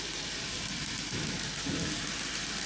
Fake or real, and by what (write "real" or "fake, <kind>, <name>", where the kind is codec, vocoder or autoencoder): real